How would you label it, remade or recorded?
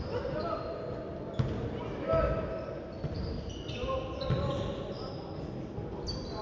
recorded